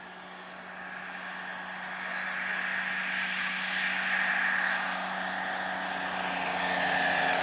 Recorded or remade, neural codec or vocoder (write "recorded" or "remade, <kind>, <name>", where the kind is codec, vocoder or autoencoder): recorded